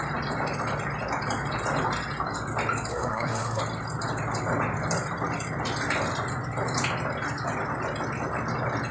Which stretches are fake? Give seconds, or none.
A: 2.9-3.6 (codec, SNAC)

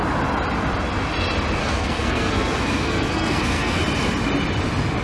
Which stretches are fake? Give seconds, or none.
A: 1.6-3.8 (codec, SNAC)

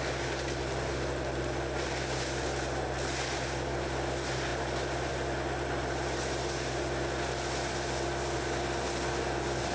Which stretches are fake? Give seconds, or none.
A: none

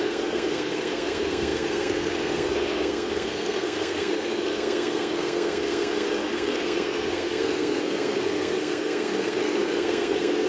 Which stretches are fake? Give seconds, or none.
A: 0.0-10.5 (codec, SNAC)

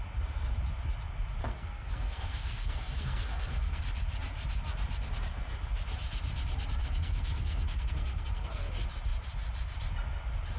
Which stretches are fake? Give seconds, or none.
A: 1.4-3.8 (codec, SNAC); 6.8-8.7

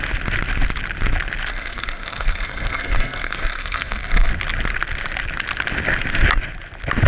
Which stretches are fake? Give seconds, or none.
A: 1.5-4.3 (codec, SNAC)

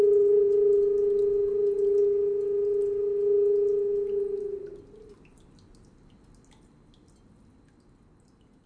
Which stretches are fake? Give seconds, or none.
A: none

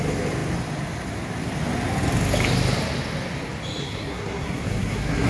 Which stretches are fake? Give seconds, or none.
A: 3.8-5.3 (codec, SNAC)